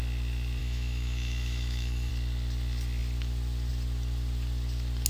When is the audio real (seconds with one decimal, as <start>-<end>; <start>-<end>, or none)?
0.0-0.6; 2.1-5.1